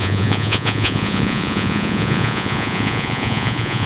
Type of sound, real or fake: fake